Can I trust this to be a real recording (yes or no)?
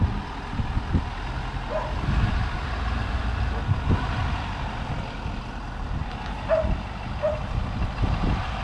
yes